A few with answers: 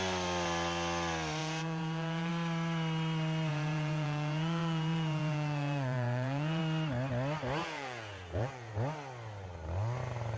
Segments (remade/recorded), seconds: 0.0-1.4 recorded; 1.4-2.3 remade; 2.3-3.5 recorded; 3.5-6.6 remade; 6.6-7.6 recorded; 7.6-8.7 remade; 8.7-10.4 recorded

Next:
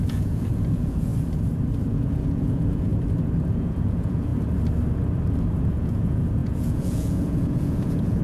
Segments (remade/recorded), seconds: 0.0-1.1 remade; 1.1-1.9 recorded; 1.9-2.9 remade; 2.9-3.5 recorded; 3.5-4.3 remade; 4.3-5.5 recorded; 5.5-8.2 remade

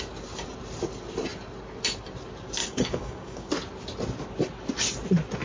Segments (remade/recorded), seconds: 0.0-2.6 recorded; 2.6-3.5 remade; 3.5-5.4 recorded